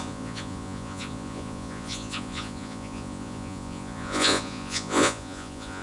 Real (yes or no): no